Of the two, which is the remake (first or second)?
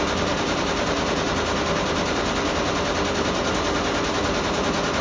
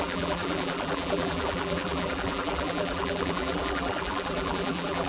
second